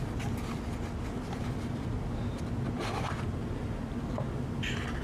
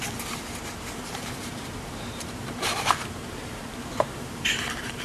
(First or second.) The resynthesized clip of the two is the second